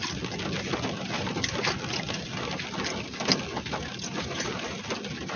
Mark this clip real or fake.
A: real